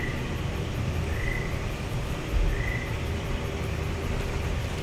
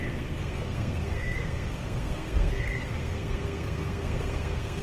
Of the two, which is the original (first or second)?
first